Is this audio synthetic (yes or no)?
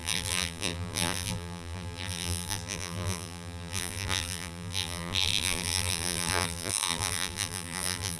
yes